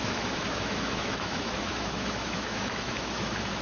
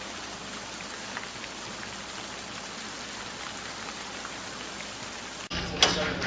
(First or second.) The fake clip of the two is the first